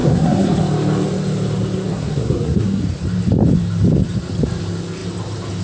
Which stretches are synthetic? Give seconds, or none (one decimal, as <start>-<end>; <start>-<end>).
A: 0.0-0.6; 1.9-2.8

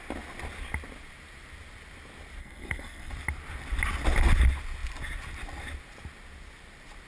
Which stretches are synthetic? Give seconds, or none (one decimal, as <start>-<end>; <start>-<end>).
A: 2.4-3.1

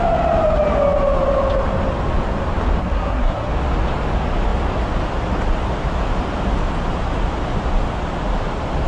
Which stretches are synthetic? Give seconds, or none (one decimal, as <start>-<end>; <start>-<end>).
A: 2.8-3.5

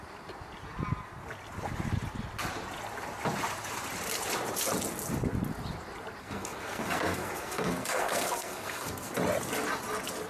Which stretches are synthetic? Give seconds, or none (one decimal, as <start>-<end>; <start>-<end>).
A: 6.2-9.1

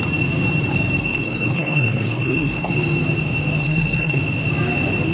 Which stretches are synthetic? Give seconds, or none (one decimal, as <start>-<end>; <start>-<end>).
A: 1.0-2.7; 3.6-4.2

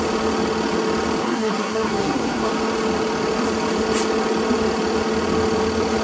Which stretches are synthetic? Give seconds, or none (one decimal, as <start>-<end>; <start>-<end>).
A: 1.2-2.5